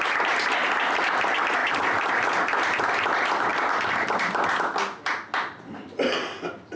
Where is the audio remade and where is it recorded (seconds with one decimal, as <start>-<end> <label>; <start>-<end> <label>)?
0.0-1.6 recorded; 1.6-2.1 remade; 2.1-3.5 recorded; 3.5-4.2 remade; 4.2-6.8 recorded